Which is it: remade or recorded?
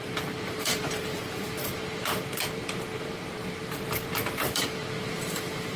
remade